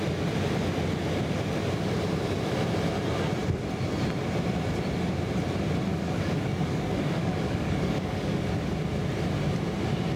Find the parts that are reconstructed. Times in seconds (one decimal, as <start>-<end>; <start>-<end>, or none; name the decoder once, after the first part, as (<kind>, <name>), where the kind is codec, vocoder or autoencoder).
5.9-8.4 (codec, DAC)